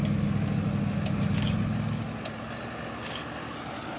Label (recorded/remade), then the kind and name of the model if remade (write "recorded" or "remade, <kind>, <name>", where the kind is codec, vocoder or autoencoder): recorded